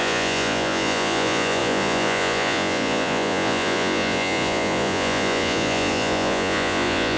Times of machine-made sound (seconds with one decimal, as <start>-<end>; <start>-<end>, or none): 0.0-7.2